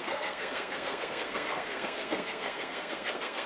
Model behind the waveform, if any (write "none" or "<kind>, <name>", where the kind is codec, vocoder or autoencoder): codec, SNAC